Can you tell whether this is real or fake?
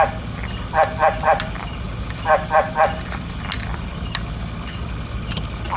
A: real